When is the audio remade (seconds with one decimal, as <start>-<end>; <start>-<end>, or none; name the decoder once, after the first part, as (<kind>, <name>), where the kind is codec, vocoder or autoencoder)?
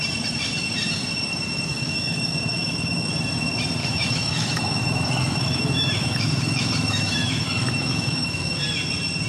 1.7-3.1 (autoencoder, DAC-VAE); 3.8-8.6